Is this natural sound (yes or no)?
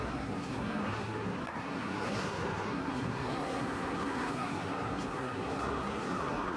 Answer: no